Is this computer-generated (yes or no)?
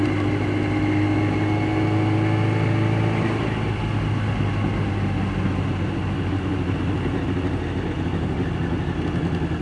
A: no